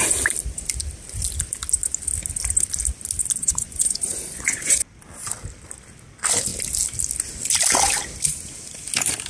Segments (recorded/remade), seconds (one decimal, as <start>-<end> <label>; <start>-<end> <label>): 0.0-3.4 recorded; 3.4-4.8 remade; 4.8-9.3 recorded